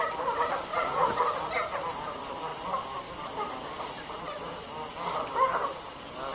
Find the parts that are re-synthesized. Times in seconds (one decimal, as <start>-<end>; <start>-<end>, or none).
0.7-1.2